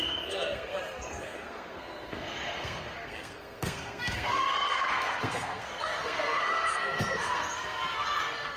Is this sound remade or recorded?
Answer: remade